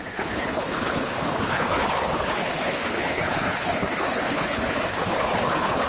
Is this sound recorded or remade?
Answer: remade